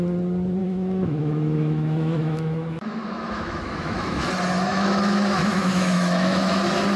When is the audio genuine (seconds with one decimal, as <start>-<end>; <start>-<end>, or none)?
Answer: 0.0-0.6; 4.3-4.7; 6.5-7.0